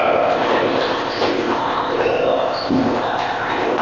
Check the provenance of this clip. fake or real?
fake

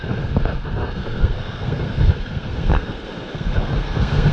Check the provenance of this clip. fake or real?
fake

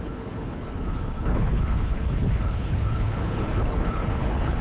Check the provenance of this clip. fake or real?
fake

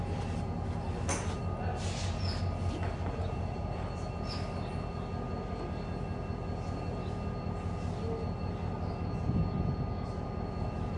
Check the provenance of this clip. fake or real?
real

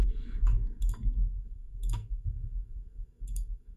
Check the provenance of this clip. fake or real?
fake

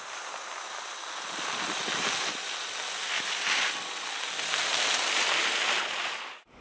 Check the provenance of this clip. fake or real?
real